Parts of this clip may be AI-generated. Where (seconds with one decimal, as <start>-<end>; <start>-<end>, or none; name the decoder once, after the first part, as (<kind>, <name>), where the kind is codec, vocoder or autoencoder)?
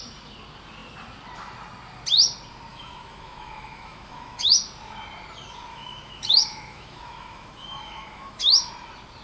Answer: 2.7-4.5 (autoencoder, DAC-VAE); 5.7-8.7